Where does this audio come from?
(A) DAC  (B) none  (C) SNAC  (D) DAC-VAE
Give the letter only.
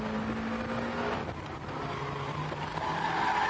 B